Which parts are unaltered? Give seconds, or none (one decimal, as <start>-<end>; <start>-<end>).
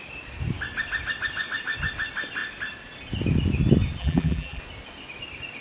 0.0-4.0; 4.6-5.6